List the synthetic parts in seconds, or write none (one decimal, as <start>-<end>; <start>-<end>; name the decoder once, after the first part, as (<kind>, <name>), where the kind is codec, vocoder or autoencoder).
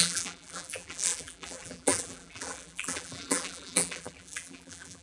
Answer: 0.0-5.0 (vocoder, BigVGAN v2)